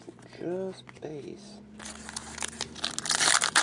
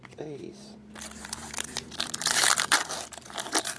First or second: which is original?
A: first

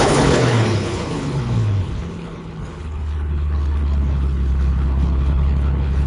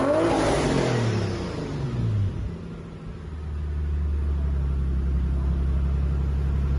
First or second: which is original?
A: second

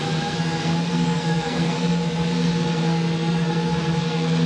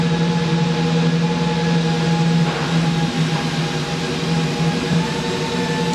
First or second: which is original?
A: second